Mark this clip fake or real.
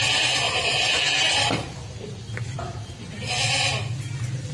real